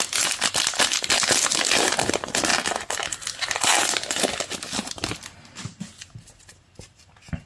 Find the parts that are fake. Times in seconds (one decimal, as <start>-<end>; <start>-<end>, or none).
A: none